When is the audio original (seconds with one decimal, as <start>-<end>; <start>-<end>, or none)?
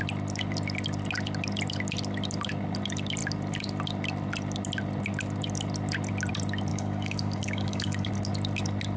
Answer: 0.0-6.7; 8.1-9.0